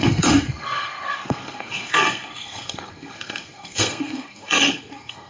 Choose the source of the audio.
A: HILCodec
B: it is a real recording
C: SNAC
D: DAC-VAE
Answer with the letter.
C